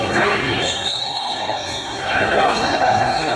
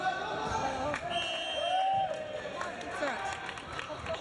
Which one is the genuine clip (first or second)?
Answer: second